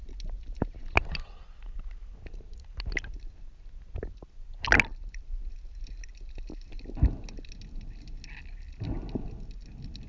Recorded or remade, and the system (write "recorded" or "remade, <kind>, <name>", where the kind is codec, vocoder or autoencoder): recorded